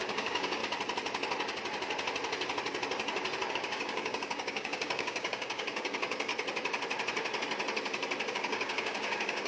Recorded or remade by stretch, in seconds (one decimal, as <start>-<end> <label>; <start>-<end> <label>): 0.0-0.6 remade; 0.6-3.5 recorded; 3.5-6.3 remade; 6.3-8.3 recorded; 8.3-9.5 remade